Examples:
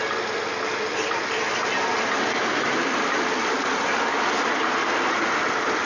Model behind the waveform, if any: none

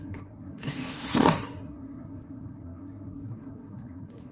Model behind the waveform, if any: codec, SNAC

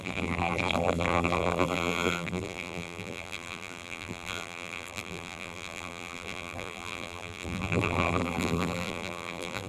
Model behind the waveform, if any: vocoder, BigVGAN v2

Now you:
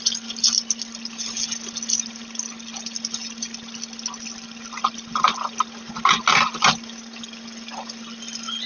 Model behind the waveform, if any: none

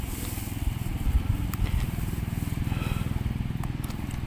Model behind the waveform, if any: none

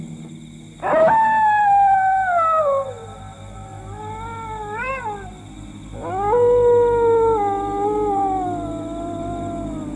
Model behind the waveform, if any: none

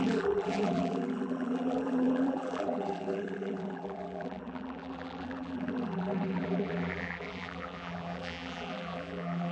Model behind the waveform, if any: vocoder, BigVGAN v2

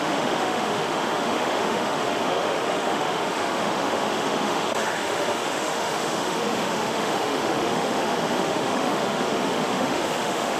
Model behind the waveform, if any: autoencoder, DAC-VAE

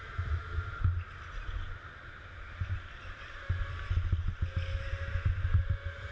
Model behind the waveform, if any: none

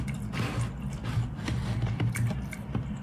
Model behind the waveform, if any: none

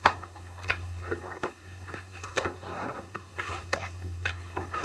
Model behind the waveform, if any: codec, SNAC